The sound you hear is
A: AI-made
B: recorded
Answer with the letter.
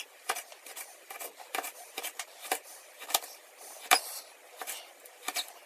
A